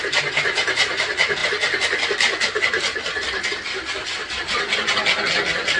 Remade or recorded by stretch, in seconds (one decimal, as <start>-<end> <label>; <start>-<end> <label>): 0.0-5.8 recorded